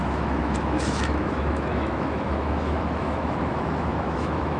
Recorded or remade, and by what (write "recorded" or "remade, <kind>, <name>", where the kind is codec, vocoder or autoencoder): remade, autoencoder, DAC-VAE